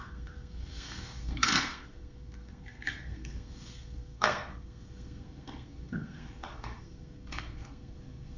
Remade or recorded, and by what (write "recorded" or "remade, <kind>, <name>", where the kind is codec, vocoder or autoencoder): remade, codec, SNAC